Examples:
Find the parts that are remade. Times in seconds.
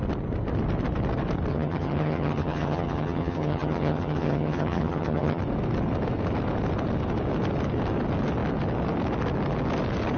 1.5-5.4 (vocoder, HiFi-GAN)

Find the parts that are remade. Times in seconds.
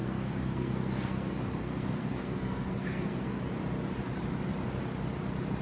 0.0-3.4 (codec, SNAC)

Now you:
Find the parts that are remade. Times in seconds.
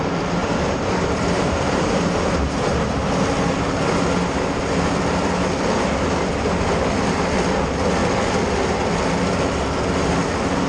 0.4-2.8 (vocoder, BigVGAN v2)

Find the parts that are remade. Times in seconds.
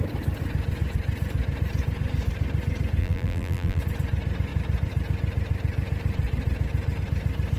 3.0-3.8 (vocoder, BigVGAN v2)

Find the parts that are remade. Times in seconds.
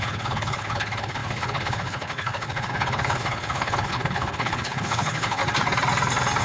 0.0-5.4 (codec, HILCodec)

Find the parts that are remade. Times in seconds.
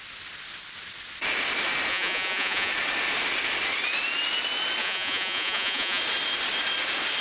1.9-2.7 (vocoder, Vocos); 4.8-6.0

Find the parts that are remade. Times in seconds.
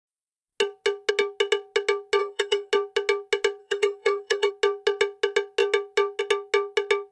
2.2-2.7 (codec, SNAC); 3.6-4.5